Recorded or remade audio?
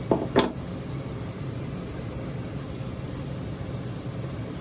recorded